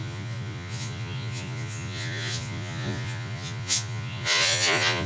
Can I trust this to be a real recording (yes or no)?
no